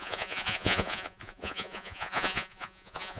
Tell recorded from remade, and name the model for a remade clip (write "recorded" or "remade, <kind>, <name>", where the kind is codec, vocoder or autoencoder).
remade, vocoder, Vocos